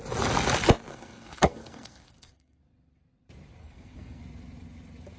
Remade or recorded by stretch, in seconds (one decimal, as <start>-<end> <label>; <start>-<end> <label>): 0.0-0.9 recorded; 0.9-2.6 remade; 2.6-3.6 recorded; 3.6-4.2 remade; 4.2-5.2 recorded